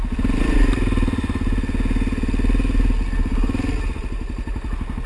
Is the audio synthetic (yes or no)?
no